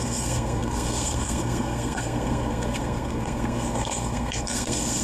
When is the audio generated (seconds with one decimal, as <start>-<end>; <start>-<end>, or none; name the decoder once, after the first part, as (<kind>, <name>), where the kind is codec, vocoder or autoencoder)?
0.0-5.0 (codec, SNAC)